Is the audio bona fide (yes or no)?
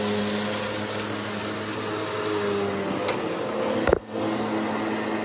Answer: yes